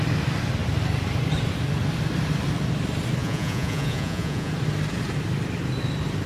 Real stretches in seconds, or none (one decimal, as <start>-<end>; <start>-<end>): 0.0-3.2; 4.5-6.3